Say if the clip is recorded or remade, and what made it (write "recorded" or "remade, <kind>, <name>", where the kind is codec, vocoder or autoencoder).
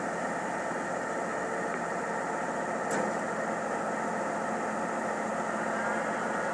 recorded